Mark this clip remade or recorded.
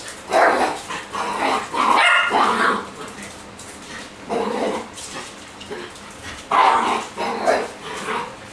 recorded